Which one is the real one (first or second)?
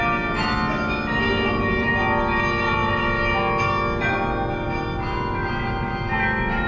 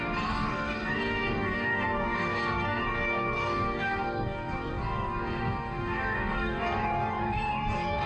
first